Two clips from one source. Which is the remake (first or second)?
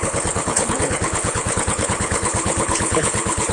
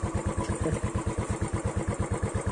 first